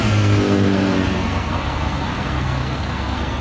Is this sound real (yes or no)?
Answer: no